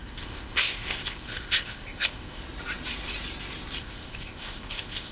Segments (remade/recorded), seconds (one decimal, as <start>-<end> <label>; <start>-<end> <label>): 0.0-2.4 remade; 2.4-3.8 recorded; 3.8-5.1 remade